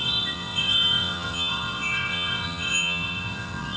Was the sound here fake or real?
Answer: fake